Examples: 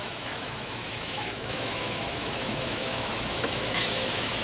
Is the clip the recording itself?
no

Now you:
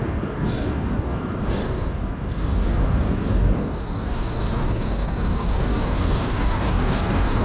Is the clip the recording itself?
no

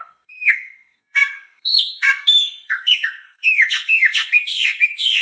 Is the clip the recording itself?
no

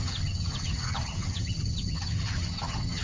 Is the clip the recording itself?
no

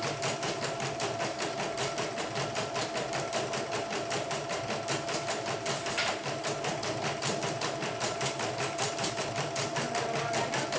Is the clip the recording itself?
yes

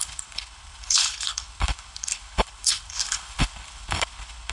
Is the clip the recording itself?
no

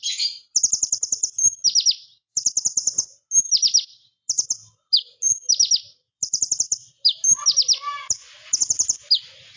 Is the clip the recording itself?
yes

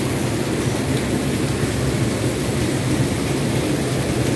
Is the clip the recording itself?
yes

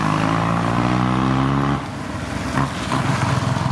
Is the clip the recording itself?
yes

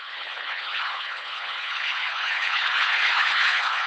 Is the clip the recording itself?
no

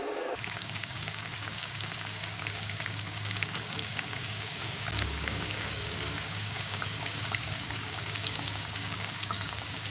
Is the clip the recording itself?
no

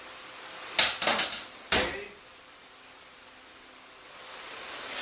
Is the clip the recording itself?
yes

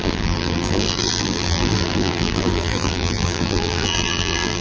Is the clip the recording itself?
no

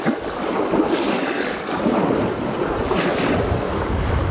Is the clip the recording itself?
yes